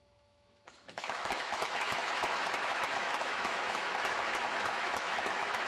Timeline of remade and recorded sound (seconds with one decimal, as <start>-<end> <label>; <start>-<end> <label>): 0.0-5.7 remade